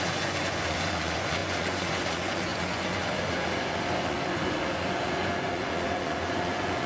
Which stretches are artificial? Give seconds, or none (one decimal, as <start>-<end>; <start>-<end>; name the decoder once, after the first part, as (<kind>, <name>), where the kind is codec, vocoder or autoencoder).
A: 0.0-6.9 (vocoder, Vocos)